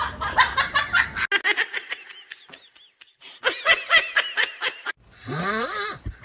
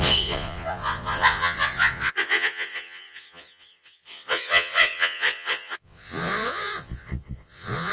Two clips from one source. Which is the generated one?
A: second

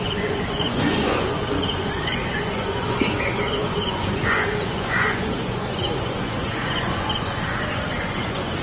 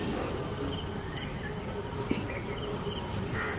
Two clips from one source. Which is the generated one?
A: first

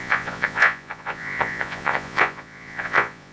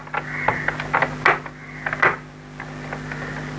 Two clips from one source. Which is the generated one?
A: first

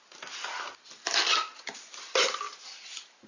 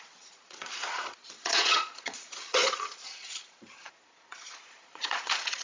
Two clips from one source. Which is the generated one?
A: second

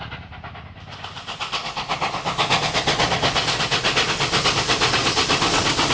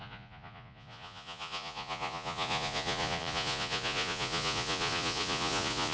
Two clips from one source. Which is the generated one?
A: second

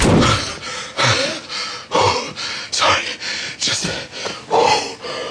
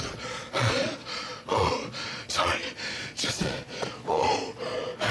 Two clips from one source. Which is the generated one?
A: second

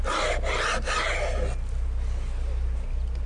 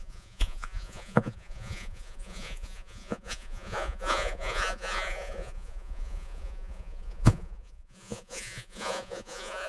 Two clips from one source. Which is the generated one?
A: second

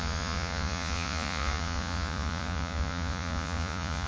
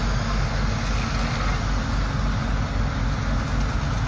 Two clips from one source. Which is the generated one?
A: first